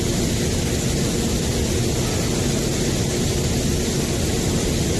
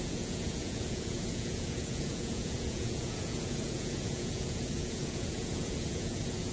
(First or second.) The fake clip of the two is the second